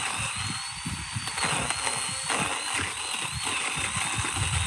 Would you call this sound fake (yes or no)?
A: no